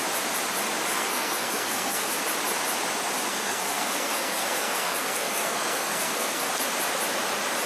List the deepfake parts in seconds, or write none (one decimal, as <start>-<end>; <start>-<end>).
0.9-2.2; 3.3-6.5